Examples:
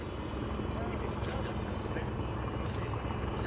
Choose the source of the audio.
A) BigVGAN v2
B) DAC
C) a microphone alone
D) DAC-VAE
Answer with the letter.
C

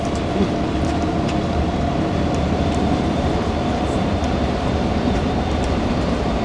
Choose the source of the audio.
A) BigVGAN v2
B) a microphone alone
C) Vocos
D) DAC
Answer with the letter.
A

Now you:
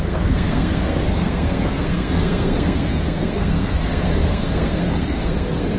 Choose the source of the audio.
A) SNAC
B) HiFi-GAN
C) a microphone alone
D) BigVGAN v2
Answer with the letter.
A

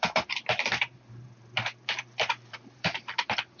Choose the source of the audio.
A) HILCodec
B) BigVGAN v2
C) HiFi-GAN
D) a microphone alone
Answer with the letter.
B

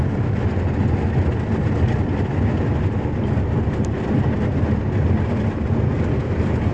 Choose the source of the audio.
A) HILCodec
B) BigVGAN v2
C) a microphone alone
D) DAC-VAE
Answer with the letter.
C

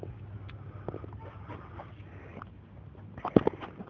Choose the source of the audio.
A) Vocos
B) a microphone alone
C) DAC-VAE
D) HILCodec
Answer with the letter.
B